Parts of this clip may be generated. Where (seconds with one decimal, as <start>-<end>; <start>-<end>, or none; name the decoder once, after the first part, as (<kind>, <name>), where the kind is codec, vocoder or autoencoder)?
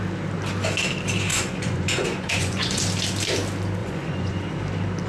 1.3-2.8 (vocoder, Vocos); 3.8-4.5